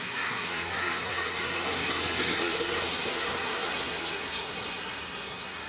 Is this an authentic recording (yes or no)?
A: no